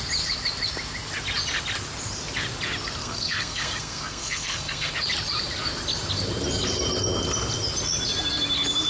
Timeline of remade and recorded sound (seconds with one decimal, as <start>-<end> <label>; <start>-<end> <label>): 0.0-3.0 recorded; 3.0-4.9 remade; 4.9-8.9 recorded